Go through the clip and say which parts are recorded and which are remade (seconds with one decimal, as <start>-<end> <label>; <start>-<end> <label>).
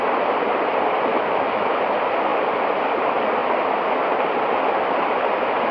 0.0-1.1 recorded; 1.1-1.7 remade; 1.7-5.7 recorded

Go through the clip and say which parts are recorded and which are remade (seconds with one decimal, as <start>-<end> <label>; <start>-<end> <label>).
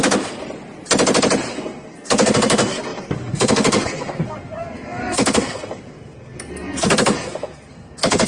0.0-0.4 remade; 0.4-1.5 recorded; 1.5-8.3 remade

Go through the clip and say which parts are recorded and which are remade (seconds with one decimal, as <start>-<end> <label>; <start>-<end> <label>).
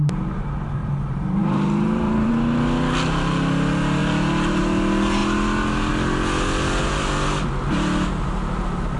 0.0-0.8 recorded; 0.8-2.3 remade; 2.3-9.0 recorded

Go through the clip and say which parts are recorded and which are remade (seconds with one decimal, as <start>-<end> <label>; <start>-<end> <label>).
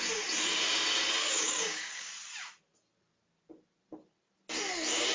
0.0-1.2 recorded; 1.2-2.1 remade; 2.1-5.1 recorded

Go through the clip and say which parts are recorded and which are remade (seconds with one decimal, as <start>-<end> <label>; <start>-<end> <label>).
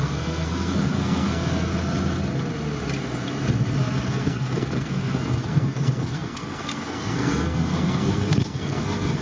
0.0-1.7 remade; 1.7-4.1 recorded; 4.1-9.2 remade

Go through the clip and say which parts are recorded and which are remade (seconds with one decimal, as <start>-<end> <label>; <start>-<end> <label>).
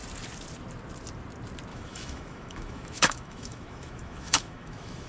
0.0-1.7 recorded; 1.7-5.1 remade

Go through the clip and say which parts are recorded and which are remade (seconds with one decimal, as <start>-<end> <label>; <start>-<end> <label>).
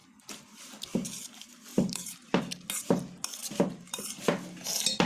0.0-1.7 recorded; 1.7-2.4 remade; 2.4-3.4 recorded; 3.4-4.3 remade; 4.3-5.1 recorded